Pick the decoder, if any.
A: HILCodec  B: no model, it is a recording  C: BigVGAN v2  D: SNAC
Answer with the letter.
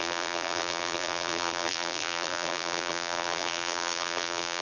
C